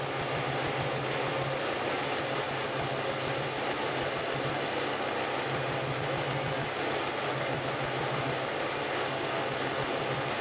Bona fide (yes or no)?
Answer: yes